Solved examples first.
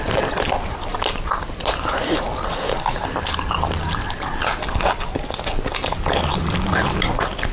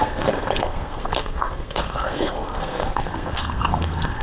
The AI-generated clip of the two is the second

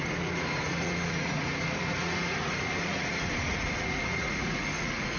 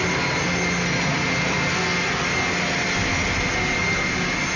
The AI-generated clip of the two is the first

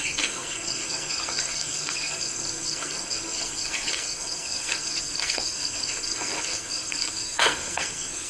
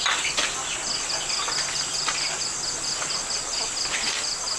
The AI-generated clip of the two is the first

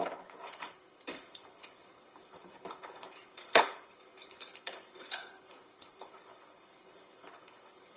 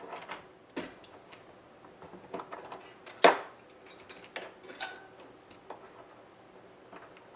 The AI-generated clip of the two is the first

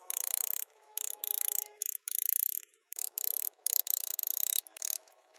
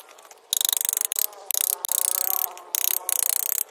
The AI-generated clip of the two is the first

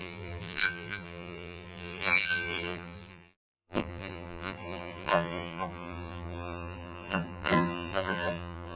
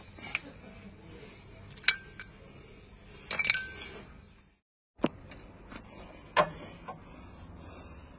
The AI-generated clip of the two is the first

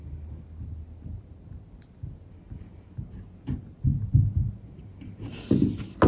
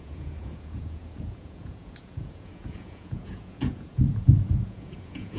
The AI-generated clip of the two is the second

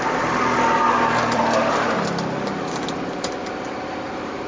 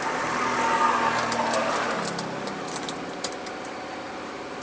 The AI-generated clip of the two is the first